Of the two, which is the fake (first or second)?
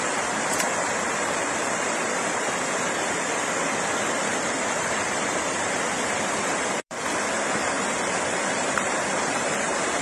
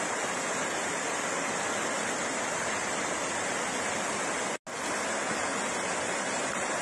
first